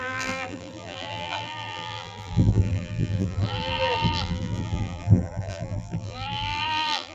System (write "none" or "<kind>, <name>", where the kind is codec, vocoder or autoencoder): vocoder, BigVGAN v2